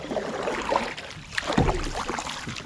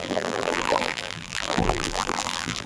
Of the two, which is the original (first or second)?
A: first